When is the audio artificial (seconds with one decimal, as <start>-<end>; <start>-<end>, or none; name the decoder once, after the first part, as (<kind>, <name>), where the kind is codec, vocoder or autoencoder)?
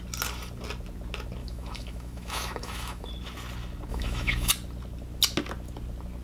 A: 1.4-3.1 (autoencoder, DAC-VAE); 3.9-4.5